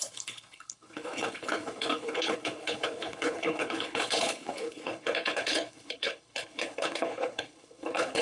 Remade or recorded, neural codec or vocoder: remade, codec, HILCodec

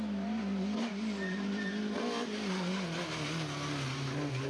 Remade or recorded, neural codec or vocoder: recorded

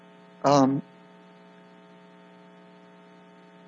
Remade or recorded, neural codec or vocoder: recorded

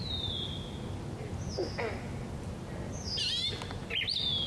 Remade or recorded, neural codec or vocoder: recorded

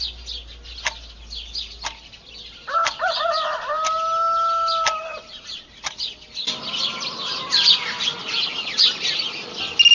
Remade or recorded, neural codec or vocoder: recorded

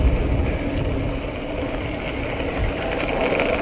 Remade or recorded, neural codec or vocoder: recorded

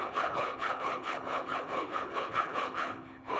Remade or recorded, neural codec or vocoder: remade, codec, HILCodec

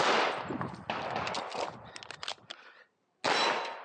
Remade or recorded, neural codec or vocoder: recorded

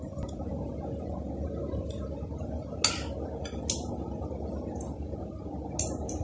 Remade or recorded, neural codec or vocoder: recorded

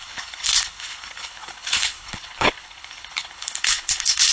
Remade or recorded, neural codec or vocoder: remade, codec, HILCodec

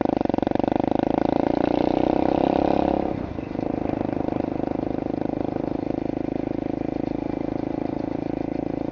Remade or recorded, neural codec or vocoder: recorded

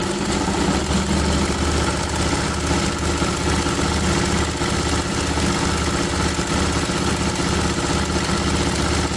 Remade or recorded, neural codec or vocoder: recorded